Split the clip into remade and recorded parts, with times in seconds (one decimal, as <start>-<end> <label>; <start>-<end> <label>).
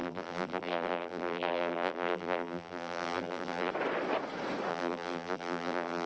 0.0-3.7 remade; 3.7-4.7 recorded; 4.7-6.1 remade